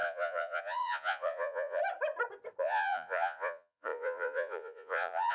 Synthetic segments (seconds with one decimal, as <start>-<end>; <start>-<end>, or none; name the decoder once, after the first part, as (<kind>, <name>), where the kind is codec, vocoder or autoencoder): 0.0-1.8 (vocoder, Vocos); 2.6-5.3